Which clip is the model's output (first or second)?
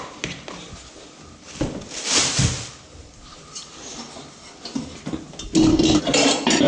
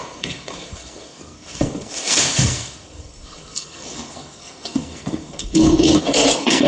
second